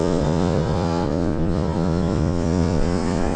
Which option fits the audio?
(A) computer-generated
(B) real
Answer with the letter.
A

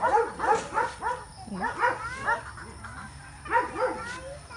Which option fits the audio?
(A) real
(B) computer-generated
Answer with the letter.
A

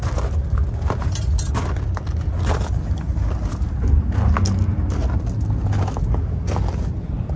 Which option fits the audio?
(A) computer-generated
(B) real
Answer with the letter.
B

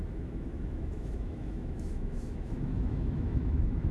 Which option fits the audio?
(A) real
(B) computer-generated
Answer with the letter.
B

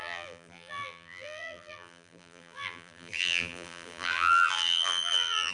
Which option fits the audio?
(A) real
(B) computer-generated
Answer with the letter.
B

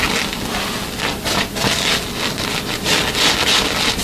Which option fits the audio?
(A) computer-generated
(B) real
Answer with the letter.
B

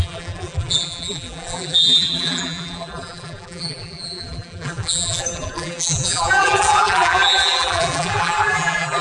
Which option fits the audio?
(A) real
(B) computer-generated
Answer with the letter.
B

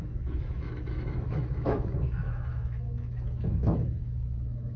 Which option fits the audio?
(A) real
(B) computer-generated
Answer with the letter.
B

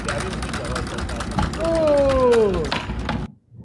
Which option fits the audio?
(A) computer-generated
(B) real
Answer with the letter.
B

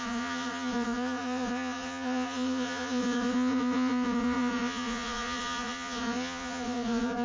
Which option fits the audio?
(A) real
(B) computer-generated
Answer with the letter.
B